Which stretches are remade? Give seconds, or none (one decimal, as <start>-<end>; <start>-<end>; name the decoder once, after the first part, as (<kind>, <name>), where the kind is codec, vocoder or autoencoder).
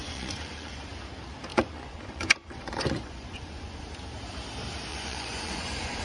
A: 0.0-0.9 (vocoder, Vocos); 1.5-3.8; 4.9-6.0